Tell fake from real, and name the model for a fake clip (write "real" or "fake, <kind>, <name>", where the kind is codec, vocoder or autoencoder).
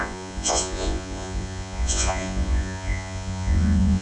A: fake, vocoder, Vocos